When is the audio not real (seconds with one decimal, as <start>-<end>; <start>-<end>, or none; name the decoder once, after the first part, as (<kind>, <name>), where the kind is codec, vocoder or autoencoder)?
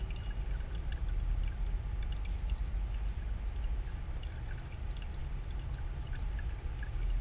none